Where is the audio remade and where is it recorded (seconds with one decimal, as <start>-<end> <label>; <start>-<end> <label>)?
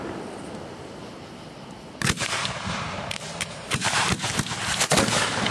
0.0-2.4 recorded; 2.4-4.3 remade; 4.3-5.5 recorded